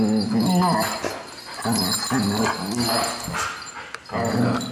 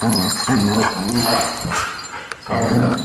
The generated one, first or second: second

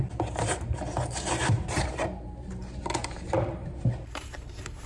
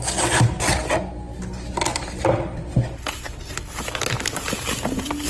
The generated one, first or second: first